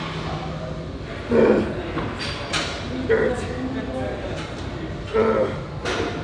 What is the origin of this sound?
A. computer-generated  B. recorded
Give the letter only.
B